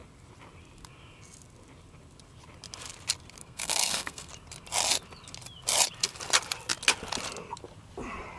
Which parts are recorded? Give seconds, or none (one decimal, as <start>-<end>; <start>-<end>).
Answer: 0.0-3.4; 4.3-8.4